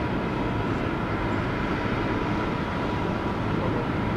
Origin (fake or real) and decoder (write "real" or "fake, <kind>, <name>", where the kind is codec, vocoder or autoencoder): real